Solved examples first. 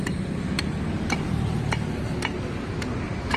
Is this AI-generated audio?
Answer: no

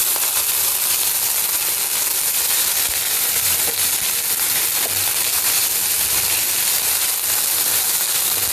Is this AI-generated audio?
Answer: no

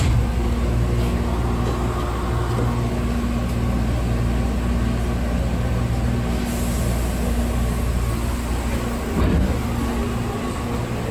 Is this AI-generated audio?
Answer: no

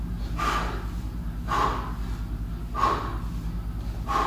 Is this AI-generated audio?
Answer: no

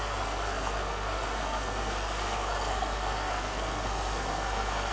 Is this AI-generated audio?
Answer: yes